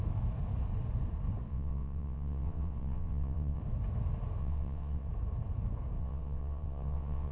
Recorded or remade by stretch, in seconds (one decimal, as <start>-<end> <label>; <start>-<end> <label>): 0.0-1.5 recorded; 1.5-3.6 remade; 3.6-4.4 recorded; 4.4-5.1 remade; 5.1-6.0 recorded; 6.0-7.3 remade